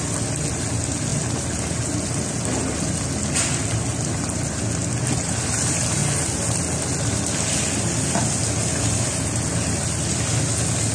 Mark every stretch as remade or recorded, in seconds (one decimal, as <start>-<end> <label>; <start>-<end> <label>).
0.0-10.9 recorded